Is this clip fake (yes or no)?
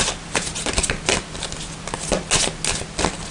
no